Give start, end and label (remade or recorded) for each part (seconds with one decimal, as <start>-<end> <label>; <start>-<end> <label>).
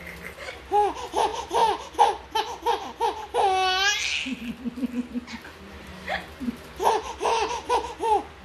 0.0-8.4 recorded